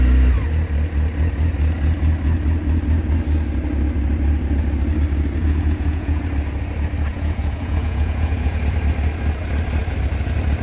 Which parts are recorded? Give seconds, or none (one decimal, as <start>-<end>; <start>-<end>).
0.0-5.4; 6.2-7.1; 8.6-10.6